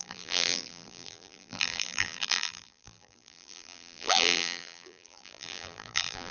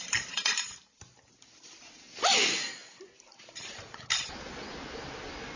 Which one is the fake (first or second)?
first